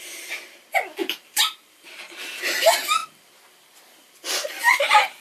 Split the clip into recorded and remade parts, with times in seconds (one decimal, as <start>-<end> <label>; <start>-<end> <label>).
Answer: 0.0-1.0 recorded; 1.0-2.0 remade; 2.0-5.2 recorded